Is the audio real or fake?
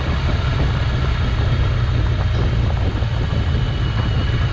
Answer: real